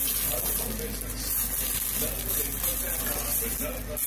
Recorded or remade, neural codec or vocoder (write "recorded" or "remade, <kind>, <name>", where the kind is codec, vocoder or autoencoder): recorded